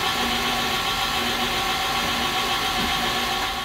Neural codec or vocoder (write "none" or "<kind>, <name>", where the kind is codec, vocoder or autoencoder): none